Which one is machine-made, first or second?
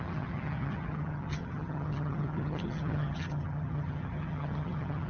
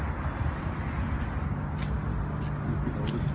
first